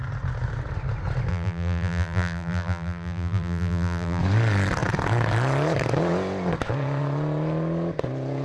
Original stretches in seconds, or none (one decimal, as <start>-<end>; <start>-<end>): 0.0-1.3; 4.2-8.4